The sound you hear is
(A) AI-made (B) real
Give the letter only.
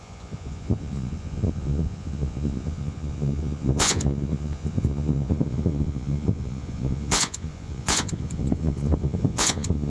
A